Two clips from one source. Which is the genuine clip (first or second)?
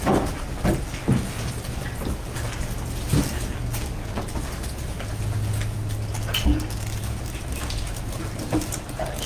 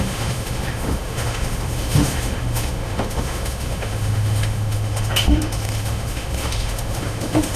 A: first